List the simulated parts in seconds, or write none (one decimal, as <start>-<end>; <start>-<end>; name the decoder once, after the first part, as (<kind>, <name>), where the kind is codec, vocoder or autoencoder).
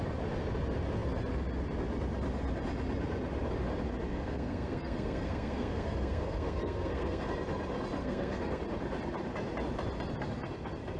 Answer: 4.1-7.3 (codec, SNAC); 8.0-8.6